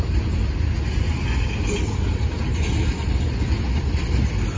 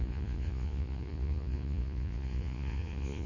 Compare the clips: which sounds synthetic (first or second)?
second